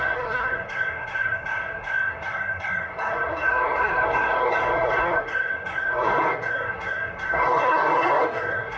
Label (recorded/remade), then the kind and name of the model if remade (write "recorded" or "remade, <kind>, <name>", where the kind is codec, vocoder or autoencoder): remade, codec, SNAC